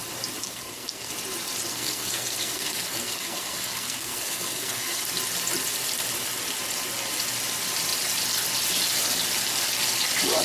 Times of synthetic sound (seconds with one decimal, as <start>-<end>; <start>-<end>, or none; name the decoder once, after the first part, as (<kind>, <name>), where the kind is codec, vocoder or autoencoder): 0.4-1.1 (codec, SNAC); 1.7-5.0

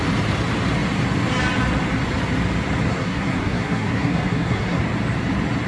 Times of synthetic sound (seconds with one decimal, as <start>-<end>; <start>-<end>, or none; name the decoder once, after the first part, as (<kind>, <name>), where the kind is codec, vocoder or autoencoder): 2.9-4.8 (codec, SNAC)